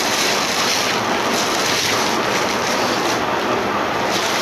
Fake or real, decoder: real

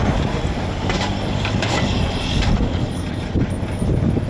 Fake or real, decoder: real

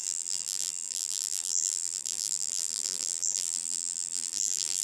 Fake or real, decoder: fake, vocoder, BigVGAN v2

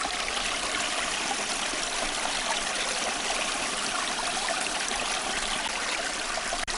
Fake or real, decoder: real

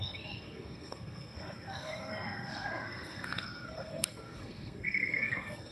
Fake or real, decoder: fake, codec, SNAC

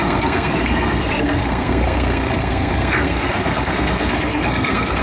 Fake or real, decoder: fake, codec, SNAC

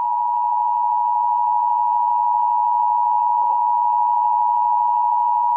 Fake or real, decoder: fake, autoencoder, DAC-VAE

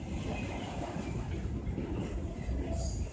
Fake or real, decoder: real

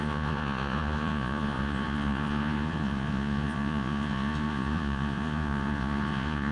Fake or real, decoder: fake, vocoder, Vocos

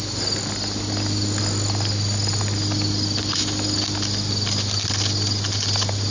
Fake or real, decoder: real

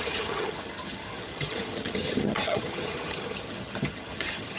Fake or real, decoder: fake, vocoder, HiFi-GAN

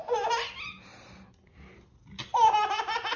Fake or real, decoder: real